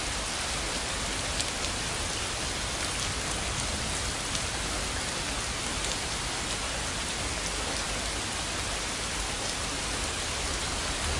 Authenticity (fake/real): real